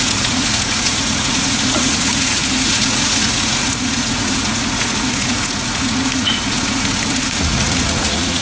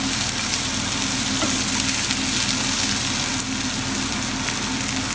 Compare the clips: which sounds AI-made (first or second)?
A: first